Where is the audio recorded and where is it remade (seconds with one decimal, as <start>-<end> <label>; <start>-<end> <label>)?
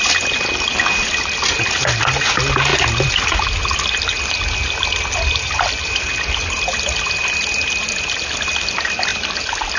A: 0.0-9.8 recorded